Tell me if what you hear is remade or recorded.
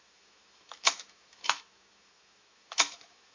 remade